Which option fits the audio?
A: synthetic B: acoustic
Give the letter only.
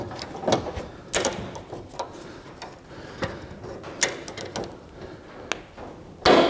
B